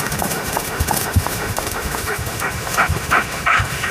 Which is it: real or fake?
fake